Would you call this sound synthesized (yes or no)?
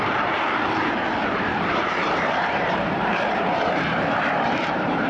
yes